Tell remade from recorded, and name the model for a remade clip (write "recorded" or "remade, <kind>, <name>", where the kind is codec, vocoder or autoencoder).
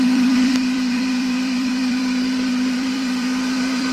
remade, vocoder, BigVGAN v2